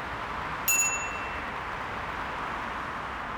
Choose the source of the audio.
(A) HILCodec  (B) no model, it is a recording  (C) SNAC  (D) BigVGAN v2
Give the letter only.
B